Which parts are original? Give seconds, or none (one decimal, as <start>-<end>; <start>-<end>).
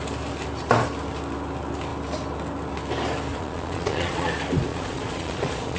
0.0-3.3; 4.3-4.7